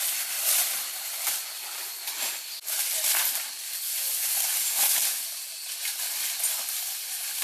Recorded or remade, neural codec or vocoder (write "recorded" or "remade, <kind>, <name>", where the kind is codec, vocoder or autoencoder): recorded